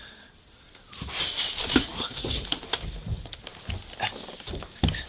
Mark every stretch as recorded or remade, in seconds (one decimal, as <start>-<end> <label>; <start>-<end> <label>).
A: 0.0-1.9 recorded; 1.9-2.4 remade; 2.4-5.1 recorded